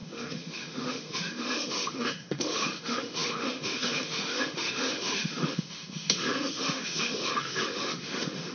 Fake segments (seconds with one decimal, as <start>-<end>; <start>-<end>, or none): 0.0-8.5